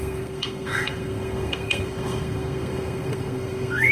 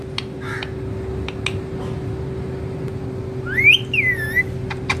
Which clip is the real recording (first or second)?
second